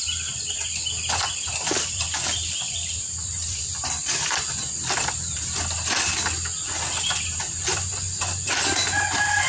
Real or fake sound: real